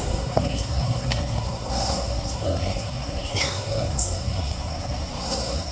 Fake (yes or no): yes